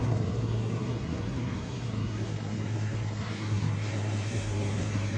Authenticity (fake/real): fake